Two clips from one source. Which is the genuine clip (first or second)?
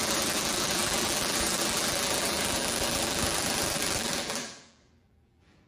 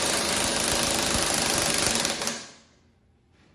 second